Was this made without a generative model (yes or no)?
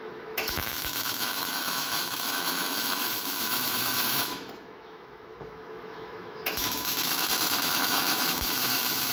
no